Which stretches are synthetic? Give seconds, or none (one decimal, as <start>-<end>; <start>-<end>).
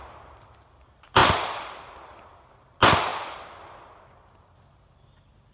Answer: 1.2-2.5